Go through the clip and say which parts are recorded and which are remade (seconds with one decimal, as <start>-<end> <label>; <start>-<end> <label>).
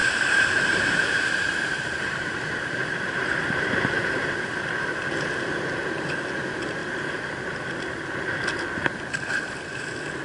0.0-4.6 remade; 4.6-10.2 recorded